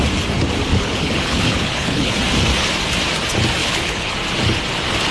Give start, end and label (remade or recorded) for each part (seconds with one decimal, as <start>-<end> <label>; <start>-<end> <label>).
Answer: 0.0-0.7 recorded; 0.7-2.1 remade; 2.1-3.6 recorded; 3.6-4.1 remade; 4.1-5.1 recorded